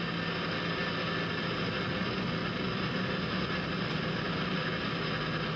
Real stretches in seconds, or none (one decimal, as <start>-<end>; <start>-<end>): 0.0-5.6